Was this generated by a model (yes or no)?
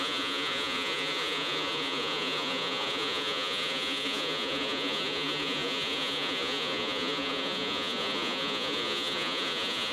yes